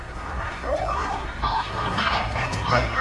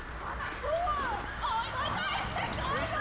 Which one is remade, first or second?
first